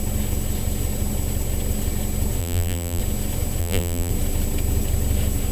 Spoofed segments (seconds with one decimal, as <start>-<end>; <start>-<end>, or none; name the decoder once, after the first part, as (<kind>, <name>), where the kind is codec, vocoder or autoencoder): 2.4-3.0 (vocoder, BigVGAN v2); 3.6-4.1